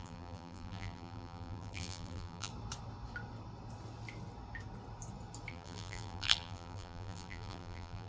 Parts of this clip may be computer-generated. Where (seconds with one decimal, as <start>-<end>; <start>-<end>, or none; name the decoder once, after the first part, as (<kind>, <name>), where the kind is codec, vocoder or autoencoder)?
0.0-2.5 (vocoder, BigVGAN v2); 5.5-8.1